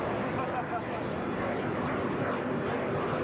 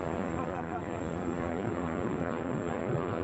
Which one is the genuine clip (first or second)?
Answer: first